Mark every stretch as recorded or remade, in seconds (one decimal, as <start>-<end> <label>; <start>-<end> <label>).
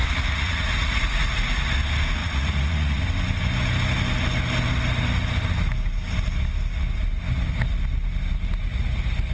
0.0-1.4 remade; 1.4-2.2 recorded; 2.2-3.0 remade; 3.0-9.3 recorded